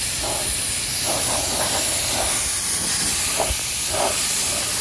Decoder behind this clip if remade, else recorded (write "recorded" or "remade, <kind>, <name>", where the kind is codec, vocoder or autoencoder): recorded